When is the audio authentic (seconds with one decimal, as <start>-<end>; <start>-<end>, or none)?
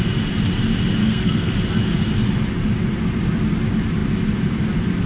0.0-1.0; 1.5-5.1